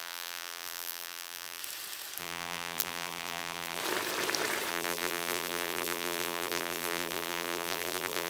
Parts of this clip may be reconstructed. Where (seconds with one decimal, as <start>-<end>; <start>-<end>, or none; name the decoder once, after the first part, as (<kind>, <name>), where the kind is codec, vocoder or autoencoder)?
0.0-1.6 (vocoder, BigVGAN v2); 2.2-3.8; 4.7-8.3